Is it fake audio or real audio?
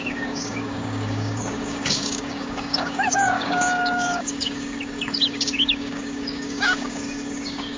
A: fake